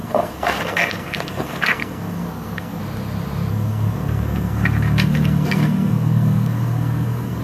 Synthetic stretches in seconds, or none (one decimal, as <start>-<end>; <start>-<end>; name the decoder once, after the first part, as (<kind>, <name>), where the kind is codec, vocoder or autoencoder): 0.0-2.8 (codec, SNAC); 3.5-7.4